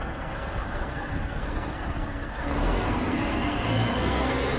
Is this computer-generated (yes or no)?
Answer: yes